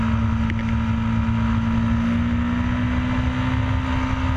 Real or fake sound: real